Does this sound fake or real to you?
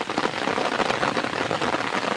real